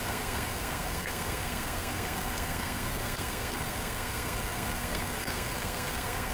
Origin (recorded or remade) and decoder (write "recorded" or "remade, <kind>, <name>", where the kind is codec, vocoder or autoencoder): remade, codec, SNAC